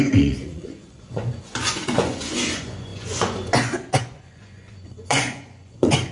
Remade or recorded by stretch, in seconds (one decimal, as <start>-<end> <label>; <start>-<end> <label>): 0.0-6.1 remade